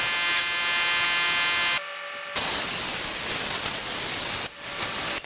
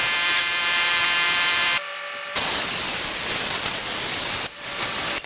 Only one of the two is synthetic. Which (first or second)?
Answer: second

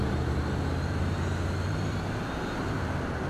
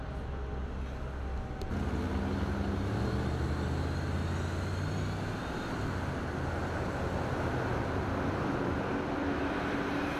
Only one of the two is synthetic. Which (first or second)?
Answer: first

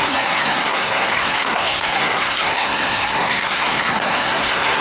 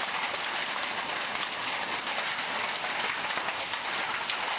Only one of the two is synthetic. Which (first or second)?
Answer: first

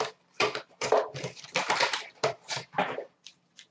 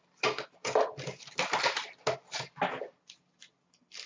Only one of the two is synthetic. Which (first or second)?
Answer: first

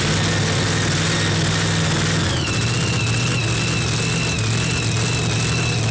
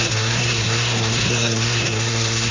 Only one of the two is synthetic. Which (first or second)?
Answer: second